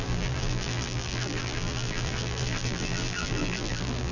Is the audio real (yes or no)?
no